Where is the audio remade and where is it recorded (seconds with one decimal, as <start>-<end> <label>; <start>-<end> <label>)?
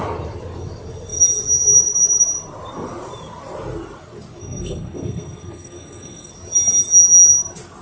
0.0-4.4 recorded; 4.4-6.3 remade; 6.3-7.8 recorded